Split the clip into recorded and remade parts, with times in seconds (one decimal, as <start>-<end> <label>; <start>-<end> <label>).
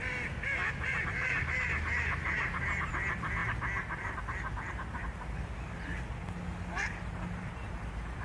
0.0-8.2 recorded